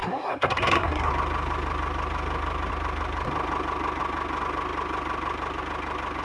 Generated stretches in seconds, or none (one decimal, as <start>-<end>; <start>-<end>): 0.0-1.1

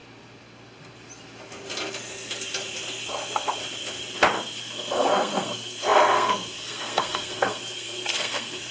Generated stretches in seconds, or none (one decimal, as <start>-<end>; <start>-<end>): 3.1-3.6; 4.6-8.7

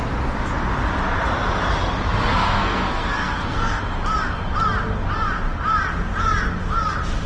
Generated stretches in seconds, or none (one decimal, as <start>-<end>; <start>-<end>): 2.3-3.8

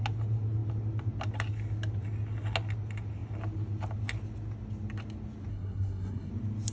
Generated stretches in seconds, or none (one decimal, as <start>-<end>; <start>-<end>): 5.5-6.3

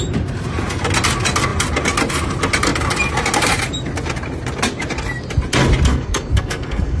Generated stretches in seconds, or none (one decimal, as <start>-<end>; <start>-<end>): 5.9-7.0

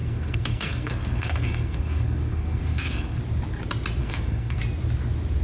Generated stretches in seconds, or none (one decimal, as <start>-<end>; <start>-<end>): 0.0-3.2; 4.0-4.6

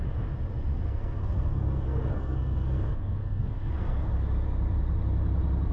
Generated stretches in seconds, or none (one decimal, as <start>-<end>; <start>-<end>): 0.7-4.1

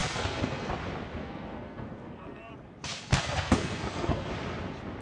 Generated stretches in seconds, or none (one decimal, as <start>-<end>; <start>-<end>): 0.0-0.7; 1.2-2.5; 2.9-4.3